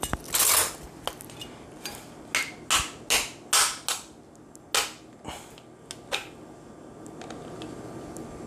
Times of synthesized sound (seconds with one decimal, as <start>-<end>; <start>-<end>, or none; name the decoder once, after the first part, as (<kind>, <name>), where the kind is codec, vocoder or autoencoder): none

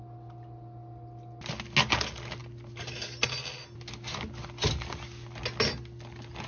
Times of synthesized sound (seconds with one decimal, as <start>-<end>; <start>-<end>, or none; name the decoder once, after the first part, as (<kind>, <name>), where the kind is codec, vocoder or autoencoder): none

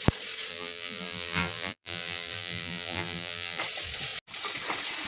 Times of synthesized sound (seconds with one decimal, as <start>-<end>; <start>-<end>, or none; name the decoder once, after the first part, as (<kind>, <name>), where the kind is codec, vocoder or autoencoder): 0.5-3.6 (vocoder, BigVGAN v2)

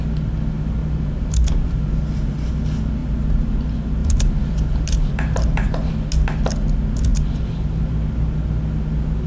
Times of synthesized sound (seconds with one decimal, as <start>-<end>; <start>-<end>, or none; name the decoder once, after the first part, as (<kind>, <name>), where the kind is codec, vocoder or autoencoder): 0.8-2.5 (vocoder, BigVGAN v2); 3.0-3.5; 4.0-5.9; 7.1-7.8

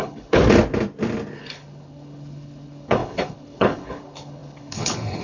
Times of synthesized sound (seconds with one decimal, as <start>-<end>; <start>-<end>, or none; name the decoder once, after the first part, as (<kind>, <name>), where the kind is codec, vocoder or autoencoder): 0.0-0.4 (codec, HILCodec); 1.4-5.2

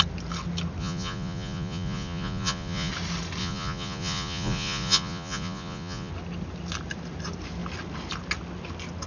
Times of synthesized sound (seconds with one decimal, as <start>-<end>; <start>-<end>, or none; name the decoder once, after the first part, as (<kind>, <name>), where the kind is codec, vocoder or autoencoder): 0.8-2.9 (vocoder, Vocos); 3.4-6.1

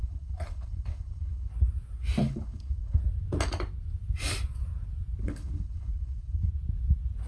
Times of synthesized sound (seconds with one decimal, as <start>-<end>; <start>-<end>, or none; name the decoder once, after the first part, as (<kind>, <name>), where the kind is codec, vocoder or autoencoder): 0.0-1.5 (codec, HILCodec); 2.2-3.0; 5.2-6.5